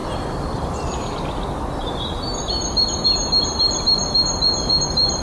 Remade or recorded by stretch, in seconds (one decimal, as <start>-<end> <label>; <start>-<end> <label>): 0.0-1.0 remade; 1.0-1.8 recorded; 1.8-5.2 remade

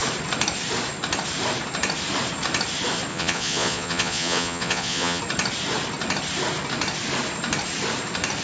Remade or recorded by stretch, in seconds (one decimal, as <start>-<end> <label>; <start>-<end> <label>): 0.0-3.1 recorded; 3.1-5.2 remade; 5.2-8.4 recorded